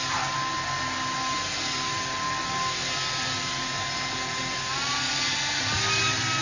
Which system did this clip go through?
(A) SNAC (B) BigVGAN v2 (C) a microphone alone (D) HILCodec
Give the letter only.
C